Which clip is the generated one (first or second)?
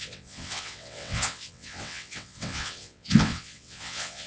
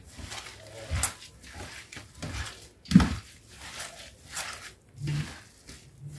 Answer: first